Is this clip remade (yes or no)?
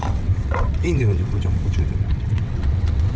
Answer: yes